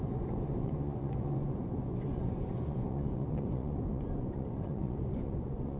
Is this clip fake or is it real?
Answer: fake